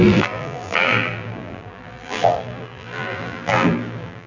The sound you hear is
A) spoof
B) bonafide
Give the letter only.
A